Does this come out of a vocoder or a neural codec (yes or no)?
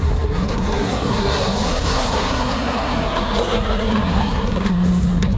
yes